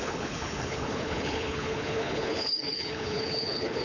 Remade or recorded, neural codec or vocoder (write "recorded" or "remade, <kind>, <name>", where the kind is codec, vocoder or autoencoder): remade, codec, HILCodec